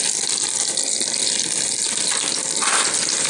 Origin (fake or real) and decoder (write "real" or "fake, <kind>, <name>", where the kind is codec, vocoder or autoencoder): fake, vocoder, BigVGAN v2